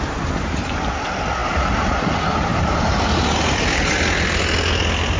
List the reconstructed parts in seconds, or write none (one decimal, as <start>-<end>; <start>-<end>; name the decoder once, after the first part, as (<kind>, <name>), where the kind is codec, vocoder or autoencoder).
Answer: 2.5-3.9 (vocoder, BigVGAN v2)